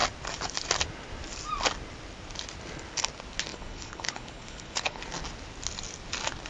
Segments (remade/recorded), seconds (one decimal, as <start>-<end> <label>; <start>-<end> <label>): 0.0-3.5 recorded; 3.5-5.0 remade; 5.0-6.5 recorded